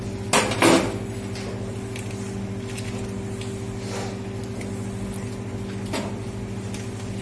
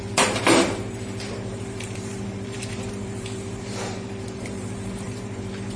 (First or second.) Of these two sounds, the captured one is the first